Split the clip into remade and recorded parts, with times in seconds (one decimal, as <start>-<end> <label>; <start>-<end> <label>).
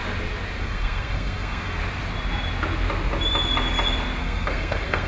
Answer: 0.0-0.6 recorded; 0.6-1.8 remade; 1.8-4.2 recorded; 4.2-5.1 remade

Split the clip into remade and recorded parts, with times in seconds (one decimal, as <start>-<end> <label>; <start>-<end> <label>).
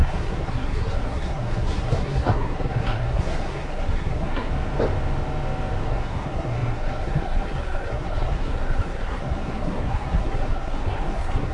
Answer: 0.0-4.5 remade; 4.5-5.8 recorded; 5.8-11.5 remade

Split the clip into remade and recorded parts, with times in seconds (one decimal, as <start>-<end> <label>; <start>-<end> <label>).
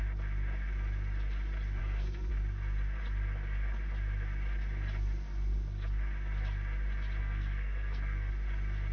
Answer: 0.0-1.8 recorded; 1.8-2.3 remade; 2.3-7.2 recorded; 7.2-8.3 remade; 8.3-8.9 recorded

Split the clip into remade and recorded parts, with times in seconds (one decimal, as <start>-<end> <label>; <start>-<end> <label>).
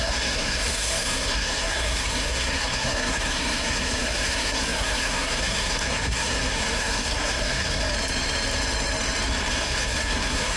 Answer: 0.0-7.8 remade; 7.8-9.5 recorded; 9.5-10.6 remade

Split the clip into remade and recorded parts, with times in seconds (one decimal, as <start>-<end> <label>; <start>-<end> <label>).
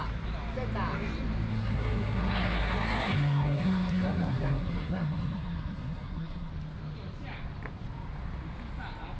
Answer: 0.0-1.5 recorded; 1.5-6.5 remade; 6.5-9.2 recorded